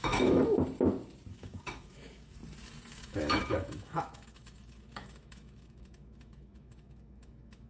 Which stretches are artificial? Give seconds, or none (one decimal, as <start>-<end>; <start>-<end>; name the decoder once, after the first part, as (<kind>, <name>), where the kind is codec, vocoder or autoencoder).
0.0-0.4 (autoencoder, DAC-VAE); 1.3-2.4; 2.9-7.7